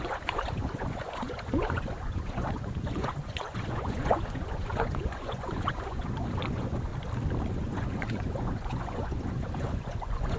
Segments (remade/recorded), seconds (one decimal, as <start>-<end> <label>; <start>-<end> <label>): 0.0-6.9 remade; 6.9-7.5 recorded; 7.5-10.4 remade